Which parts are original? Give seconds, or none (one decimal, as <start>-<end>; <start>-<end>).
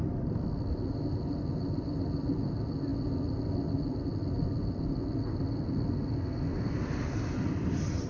0.0-8.1